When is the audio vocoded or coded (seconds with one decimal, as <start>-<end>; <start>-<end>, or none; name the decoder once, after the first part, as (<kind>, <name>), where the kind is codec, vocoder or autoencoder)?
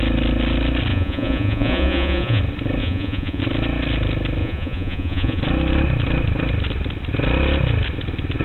0.9-2.4 (vocoder, Vocos); 2.8-3.4; 4.4-5.4